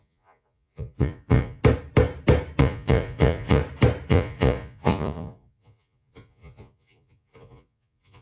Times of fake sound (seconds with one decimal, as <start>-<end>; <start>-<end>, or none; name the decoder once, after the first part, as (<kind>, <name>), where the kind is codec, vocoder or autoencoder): 0.0-1.6 (vocoder, Vocos); 2.6-3.6; 4.1-8.2